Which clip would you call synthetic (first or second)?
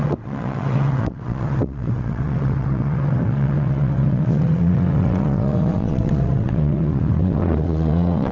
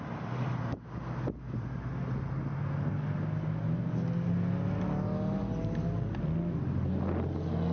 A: first